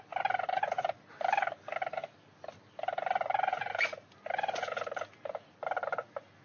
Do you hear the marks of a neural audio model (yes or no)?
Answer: no